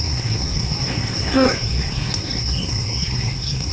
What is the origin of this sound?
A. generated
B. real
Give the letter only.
A